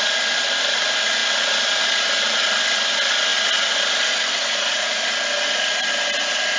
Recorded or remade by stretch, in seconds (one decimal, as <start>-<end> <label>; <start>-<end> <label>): 0.0-6.6 recorded